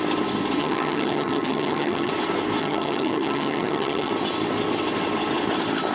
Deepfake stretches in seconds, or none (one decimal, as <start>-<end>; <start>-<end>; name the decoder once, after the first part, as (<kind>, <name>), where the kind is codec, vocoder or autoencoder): 0.6-2.1 (vocoder, HiFi-GAN); 2.6-4.1